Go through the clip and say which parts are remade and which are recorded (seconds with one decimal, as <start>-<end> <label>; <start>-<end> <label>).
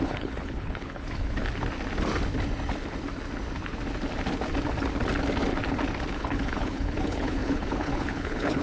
0.0-1.4 remade; 1.4-6.1 recorded; 6.1-8.6 remade